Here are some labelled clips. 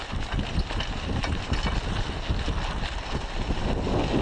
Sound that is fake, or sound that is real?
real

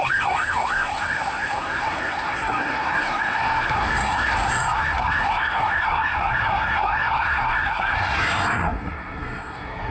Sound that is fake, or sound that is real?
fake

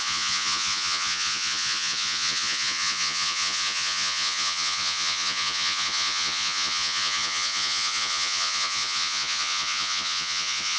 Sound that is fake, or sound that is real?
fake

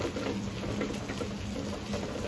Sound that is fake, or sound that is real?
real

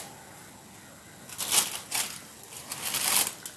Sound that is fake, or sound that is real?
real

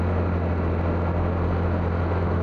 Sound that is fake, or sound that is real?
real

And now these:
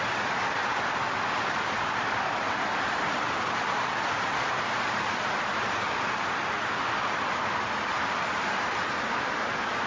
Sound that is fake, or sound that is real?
real